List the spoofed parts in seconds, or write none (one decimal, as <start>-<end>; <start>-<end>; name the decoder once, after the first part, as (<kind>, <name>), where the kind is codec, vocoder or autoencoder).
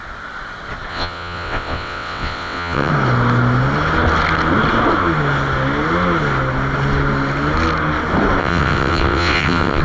0.9-2.9 (vocoder, WaveNeXt); 8.4-9.8